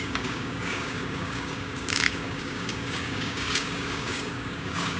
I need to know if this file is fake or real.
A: fake